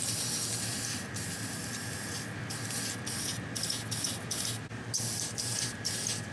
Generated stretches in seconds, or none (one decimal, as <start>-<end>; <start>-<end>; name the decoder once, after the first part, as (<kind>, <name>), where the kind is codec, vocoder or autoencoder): 0.7-2.4 (vocoder, BigVGAN v2)